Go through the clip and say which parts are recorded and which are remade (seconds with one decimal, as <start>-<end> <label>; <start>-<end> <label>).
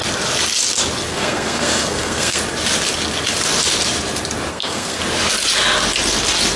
0.0-1.1 recorded; 1.1-2.4 remade; 2.4-4.5 recorded; 4.5-5.0 remade; 5.0-6.6 recorded